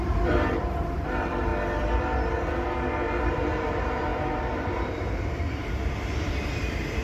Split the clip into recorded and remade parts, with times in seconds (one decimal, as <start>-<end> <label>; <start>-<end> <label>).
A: 0.0-1.5 remade; 1.5-3.2 recorded; 3.2-7.0 remade